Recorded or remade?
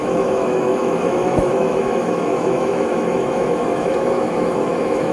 remade